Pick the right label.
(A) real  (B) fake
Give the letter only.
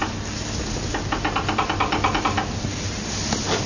A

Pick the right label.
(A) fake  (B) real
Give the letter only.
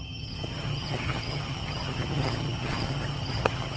A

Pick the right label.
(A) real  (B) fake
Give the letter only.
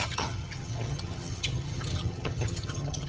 B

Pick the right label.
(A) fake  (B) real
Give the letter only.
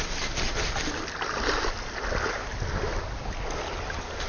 B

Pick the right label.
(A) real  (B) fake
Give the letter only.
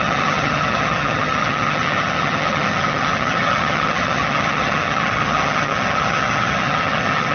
B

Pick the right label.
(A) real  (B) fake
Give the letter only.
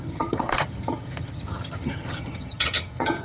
B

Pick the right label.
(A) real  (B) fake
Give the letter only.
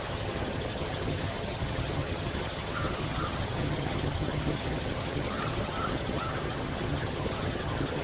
B